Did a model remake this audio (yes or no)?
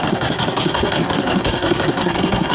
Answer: yes